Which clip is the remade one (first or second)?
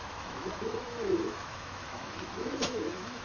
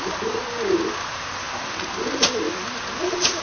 first